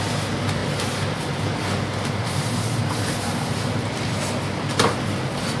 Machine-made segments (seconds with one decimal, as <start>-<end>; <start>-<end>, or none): none

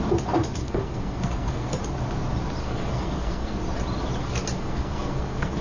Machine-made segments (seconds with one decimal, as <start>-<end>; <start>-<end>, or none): 0.6-1.7; 2.6-3.6; 4.2-5.6

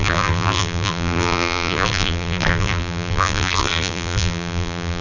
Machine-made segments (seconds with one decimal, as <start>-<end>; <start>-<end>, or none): 0.0-5.0

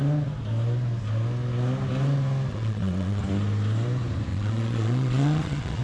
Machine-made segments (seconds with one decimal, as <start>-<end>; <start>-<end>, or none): 2.5-3.2; 4.3-5.8

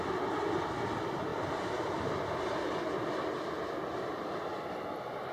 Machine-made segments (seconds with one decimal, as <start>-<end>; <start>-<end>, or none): 1.3-2.5